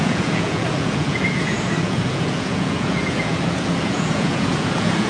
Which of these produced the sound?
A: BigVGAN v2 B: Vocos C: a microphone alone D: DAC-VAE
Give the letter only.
B